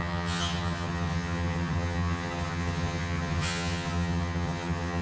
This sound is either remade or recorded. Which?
remade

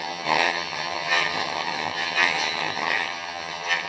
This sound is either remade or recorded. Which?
remade